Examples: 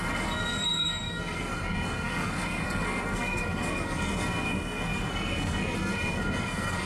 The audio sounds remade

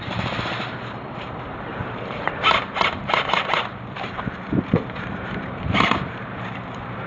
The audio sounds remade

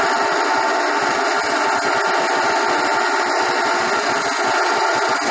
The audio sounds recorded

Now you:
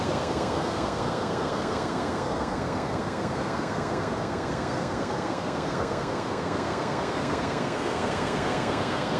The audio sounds remade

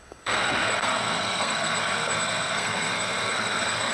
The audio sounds remade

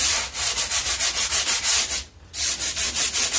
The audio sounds recorded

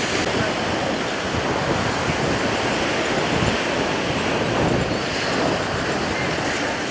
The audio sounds recorded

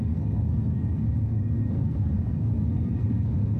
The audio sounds remade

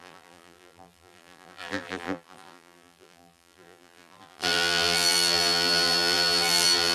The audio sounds remade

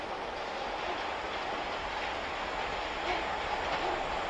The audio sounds recorded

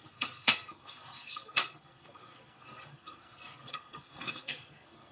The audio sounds remade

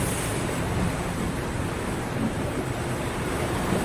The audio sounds remade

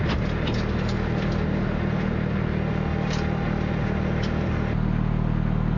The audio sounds recorded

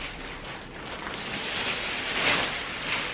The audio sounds recorded